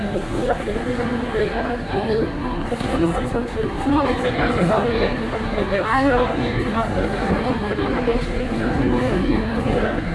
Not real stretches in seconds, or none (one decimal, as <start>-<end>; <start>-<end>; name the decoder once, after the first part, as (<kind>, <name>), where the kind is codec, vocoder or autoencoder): 0.0-10.1 (codec, SNAC)